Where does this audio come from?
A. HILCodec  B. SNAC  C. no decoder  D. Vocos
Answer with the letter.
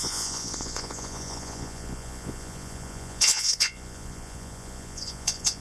D